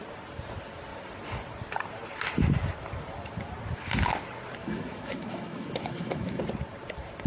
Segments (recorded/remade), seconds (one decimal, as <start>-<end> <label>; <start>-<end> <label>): 0.0-4.6 recorded; 4.6-6.4 remade; 6.4-7.3 recorded